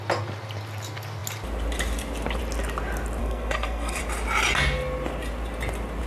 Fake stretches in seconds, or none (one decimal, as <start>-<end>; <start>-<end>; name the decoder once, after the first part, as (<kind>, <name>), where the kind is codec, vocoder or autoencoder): 3.2-4.0 (codec, SNAC)